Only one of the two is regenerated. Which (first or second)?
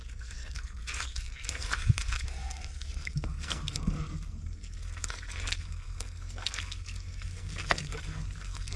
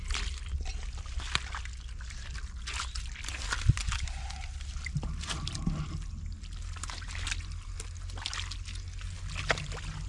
first